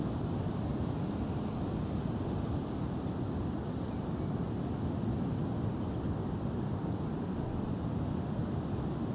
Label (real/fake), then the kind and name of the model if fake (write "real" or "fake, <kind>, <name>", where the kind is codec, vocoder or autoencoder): real